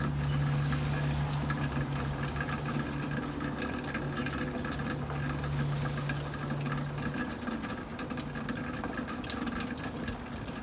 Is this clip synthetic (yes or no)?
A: no